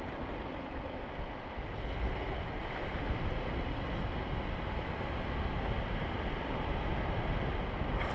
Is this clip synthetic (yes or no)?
no